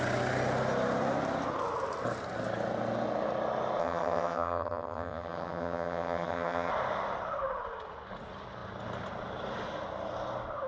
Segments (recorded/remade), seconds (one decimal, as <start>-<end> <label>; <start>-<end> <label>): 0.0-3.8 recorded; 3.8-6.7 remade; 6.7-10.7 recorded